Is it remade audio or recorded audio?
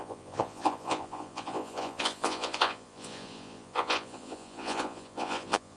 remade